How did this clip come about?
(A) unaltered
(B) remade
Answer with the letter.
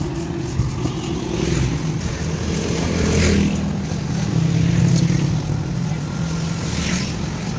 A